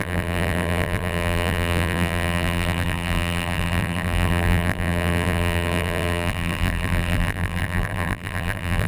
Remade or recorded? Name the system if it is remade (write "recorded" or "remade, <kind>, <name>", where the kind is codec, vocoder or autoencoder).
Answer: remade, vocoder, BigVGAN v2